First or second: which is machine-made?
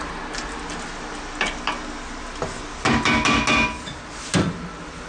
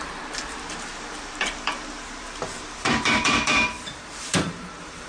second